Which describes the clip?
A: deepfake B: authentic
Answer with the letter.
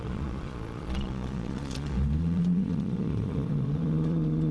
A